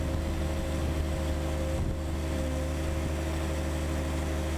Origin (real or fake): real